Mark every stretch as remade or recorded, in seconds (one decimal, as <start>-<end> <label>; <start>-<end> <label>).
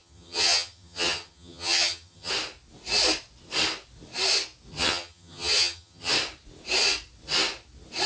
0.0-2.3 remade; 2.3-4.7 recorded; 4.7-6.1 remade; 6.1-8.1 recorded